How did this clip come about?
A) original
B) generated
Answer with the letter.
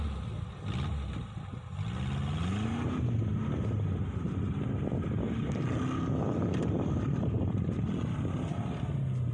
A